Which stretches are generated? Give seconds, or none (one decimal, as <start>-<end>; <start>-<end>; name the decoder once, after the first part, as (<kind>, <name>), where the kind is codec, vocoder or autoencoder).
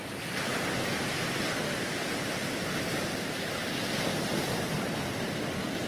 0.0-0.5 (vocoder, BigVGAN v2); 1.5-2.1; 2.7-5.9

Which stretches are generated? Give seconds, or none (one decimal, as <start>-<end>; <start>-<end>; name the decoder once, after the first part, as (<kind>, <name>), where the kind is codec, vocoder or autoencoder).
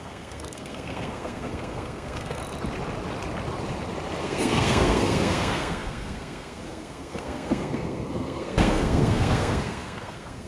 0.0-2.4 (codec, SNAC); 4.2-10.5